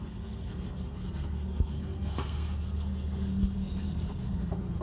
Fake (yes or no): yes